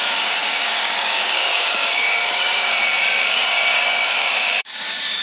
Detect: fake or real fake